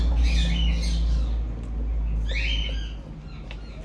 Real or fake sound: real